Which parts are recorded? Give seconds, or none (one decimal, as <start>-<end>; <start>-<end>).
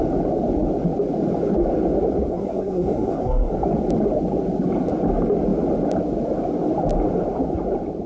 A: 0.0-2.3; 3.5-8.1